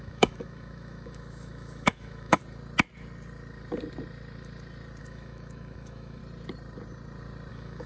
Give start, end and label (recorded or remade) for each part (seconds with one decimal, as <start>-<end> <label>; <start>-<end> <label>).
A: 0.0-2.4 remade; 2.4-5.0 recorded; 5.0-6.2 remade; 6.2-7.5 recorded; 7.5-7.9 remade